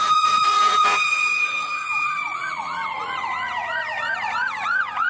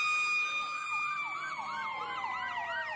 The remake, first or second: first